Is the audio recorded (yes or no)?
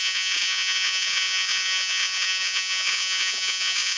no